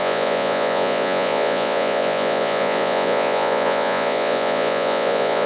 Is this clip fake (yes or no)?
yes